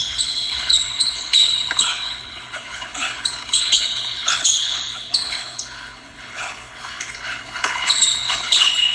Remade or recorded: remade